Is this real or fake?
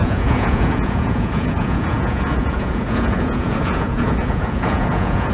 fake